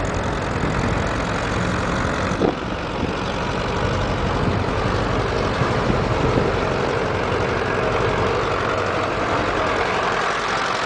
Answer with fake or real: real